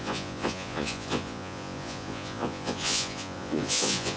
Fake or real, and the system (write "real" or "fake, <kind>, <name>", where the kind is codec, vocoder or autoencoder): fake, vocoder, Vocos